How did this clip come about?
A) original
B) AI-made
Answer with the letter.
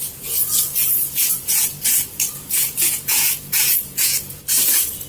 B